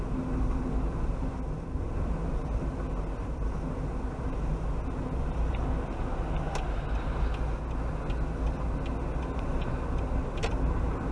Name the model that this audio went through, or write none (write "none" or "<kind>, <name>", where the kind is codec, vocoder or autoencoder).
none